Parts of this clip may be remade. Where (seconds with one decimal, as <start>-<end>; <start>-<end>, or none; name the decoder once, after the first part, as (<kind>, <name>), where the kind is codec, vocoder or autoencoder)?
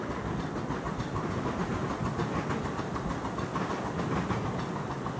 none